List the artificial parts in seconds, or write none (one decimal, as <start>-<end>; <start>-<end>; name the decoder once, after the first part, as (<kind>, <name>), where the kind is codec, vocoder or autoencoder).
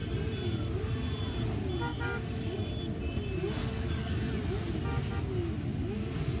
1.9-2.6 (codec, DAC); 3.6-4.2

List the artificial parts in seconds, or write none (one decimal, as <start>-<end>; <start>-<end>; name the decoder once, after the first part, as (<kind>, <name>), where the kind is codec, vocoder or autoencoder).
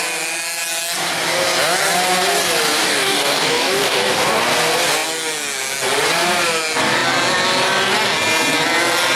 2.8-4.4 (codec, DAC)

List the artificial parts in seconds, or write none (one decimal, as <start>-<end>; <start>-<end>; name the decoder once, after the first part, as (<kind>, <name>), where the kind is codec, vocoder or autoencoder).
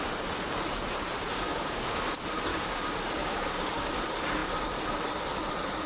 1.5-2.0 (codec, DAC); 2.5-3.9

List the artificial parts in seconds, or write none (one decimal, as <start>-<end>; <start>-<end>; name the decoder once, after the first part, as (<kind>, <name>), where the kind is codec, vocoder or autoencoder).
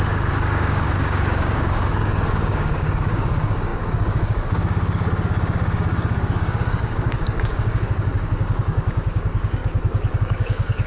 0.0-10.9 (codec, DAC)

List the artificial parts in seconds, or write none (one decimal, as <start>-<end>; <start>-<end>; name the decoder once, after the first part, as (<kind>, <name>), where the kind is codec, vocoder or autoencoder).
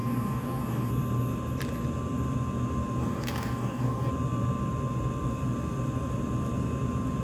0.0-0.9 (codec, DAC); 3.0-4.1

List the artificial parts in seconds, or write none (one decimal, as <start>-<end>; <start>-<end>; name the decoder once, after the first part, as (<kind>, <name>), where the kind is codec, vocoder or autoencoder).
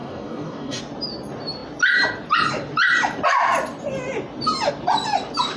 0.0-0.8 (codec, DAC)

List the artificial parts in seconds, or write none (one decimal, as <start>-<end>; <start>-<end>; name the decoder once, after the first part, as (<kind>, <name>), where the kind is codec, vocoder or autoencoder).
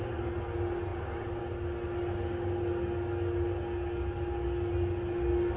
none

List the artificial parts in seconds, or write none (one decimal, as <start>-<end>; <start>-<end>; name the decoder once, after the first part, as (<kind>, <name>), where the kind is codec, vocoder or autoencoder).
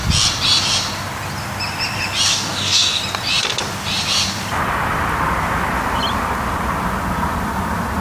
2.3-3.0 (codec, DAC)